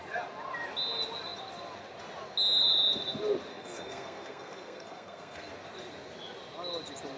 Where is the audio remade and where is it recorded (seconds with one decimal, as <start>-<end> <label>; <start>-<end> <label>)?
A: 0.0-3.5 recorded; 3.5-5.5 remade; 5.5-7.2 recorded